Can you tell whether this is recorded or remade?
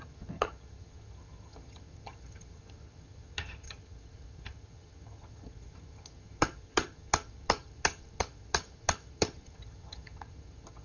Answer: remade